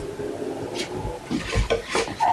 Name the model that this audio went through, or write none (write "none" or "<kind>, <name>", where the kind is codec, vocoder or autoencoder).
none